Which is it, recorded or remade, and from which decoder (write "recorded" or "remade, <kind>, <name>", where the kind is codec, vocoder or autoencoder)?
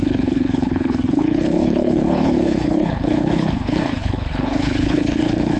remade, codec, HILCodec